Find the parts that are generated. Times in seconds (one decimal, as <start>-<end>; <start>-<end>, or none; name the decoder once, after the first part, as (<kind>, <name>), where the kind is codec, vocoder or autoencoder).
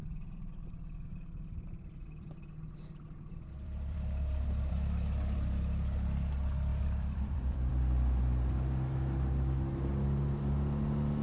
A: 0.0-4.7 (vocoder, BigVGAN v2); 6.7-7.7